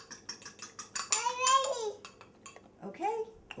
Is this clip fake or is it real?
real